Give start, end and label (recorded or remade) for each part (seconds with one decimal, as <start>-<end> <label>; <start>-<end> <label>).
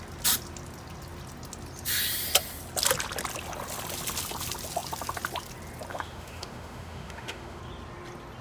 0.0-5.9 recorded; 5.9-7.6 remade; 7.6-8.4 recorded